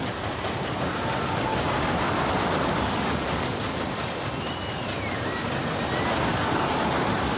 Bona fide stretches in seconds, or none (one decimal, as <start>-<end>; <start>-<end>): 0.0-1.5; 2.5-4.6; 5.3-7.4